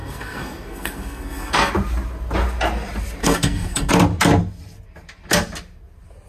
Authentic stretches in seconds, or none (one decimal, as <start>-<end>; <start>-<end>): 1.7-3.2; 3.9-6.3

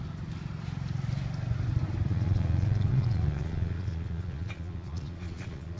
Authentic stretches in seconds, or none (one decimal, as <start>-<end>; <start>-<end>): 0.0-2.1